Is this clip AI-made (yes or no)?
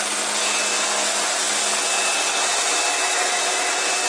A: no